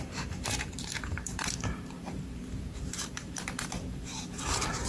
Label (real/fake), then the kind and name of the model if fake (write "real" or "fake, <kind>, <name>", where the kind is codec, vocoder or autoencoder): fake, vocoder, BigVGAN v2